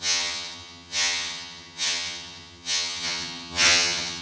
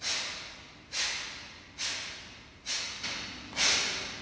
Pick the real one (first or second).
second